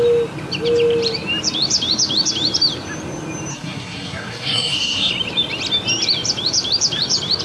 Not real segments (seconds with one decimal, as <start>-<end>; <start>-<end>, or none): 3.5-5.1